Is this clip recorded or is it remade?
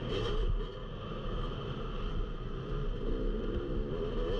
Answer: recorded